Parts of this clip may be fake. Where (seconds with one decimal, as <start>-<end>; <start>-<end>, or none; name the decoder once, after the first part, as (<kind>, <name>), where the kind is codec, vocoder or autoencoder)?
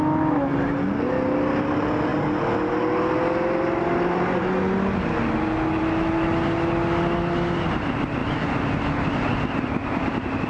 none